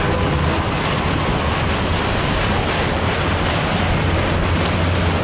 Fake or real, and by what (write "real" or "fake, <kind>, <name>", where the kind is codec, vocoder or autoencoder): real